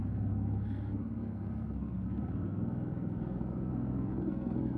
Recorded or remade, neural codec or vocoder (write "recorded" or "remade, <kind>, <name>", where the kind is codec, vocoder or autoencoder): remade, codec, SNAC